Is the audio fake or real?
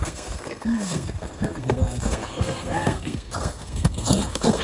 fake